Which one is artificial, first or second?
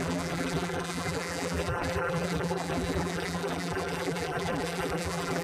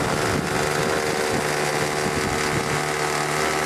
first